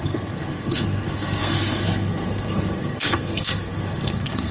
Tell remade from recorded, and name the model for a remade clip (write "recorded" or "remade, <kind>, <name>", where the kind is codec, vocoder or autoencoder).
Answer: remade, codec, SNAC